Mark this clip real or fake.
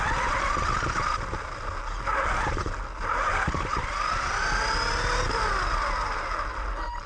real